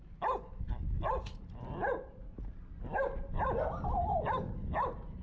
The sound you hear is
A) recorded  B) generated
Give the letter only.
A